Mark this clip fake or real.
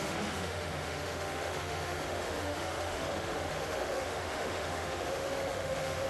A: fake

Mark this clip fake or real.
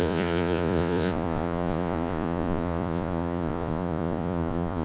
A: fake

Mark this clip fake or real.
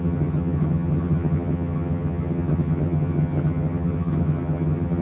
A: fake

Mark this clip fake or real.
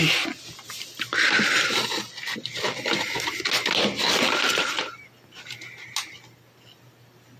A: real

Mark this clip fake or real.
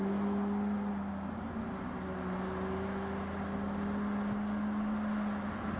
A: real